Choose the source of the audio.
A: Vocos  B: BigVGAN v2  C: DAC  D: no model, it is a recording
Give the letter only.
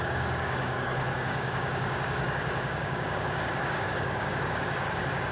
C